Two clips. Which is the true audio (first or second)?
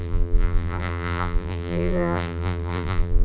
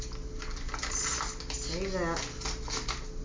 second